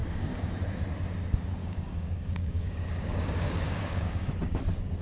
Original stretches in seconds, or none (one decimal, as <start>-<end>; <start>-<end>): 0.5-1.6; 4.4-5.0